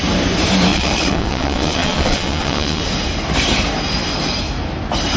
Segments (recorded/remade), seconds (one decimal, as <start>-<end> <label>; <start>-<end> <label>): 0.0-0.7 recorded; 0.7-2.8 remade; 2.8-5.2 recorded